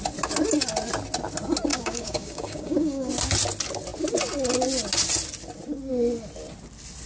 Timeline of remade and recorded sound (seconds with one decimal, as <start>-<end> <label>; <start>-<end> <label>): 0.0-1.7 recorded; 1.7-3.1 remade; 3.1-7.1 recorded